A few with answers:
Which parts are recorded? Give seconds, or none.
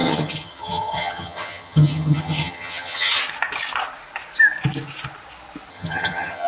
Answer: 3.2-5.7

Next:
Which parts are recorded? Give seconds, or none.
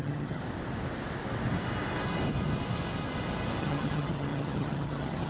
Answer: 0.4-3.6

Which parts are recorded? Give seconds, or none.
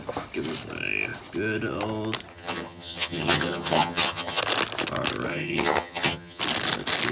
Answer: 0.0-2.3; 4.4-5.3; 6.4-7.1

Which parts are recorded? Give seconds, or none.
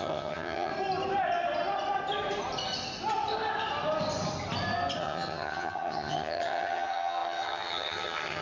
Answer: 0.7-5.0